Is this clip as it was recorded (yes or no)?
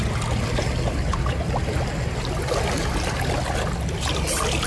yes